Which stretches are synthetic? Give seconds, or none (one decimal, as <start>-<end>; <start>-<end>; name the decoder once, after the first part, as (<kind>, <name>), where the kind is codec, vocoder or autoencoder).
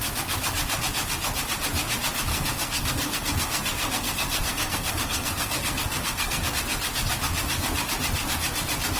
2.3-6.5 (codec, SNAC)